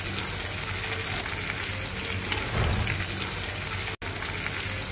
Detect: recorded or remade recorded